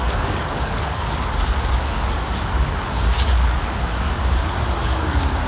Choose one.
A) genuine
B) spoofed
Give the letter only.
B